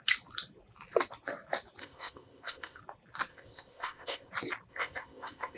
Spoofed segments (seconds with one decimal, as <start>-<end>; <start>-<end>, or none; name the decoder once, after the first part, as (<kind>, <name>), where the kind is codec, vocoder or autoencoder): 1.8-2.8 (codec, ZipCodec); 3.3-4.3; 4.7-5.6

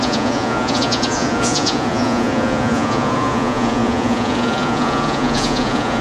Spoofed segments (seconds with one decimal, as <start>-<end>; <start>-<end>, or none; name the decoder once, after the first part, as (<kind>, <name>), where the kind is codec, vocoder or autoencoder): 0.0-6.0 (vocoder, Vocos)

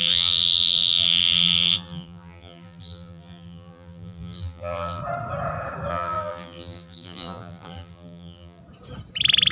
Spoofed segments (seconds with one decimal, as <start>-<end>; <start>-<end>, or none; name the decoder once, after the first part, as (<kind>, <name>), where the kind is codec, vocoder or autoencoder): 0.0-5.0 (vocoder, BigVGAN v2); 5.9-8.6

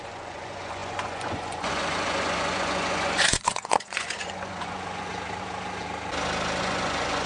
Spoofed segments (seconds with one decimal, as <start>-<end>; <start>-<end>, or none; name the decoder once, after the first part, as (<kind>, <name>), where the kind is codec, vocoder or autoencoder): 0.0-5.1 (vocoder, Vocos); 6.6-7.3

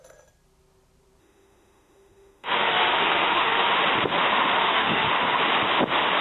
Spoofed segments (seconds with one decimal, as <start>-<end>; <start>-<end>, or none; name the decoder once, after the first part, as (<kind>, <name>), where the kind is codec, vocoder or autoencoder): 1.2-3.7 (autoencoder, DAC-VAE); 4.6-5.1

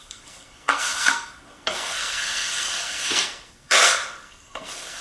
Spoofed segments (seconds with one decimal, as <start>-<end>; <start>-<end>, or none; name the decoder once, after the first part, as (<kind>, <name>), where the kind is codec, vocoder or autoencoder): 0.0-5.0 (codec, SNAC)

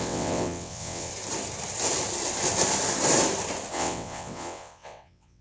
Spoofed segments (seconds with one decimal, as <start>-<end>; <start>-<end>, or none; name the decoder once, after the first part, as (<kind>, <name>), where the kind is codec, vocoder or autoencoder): 0.0-1.1 (vocoder, WaveNeXt); 3.7-5.4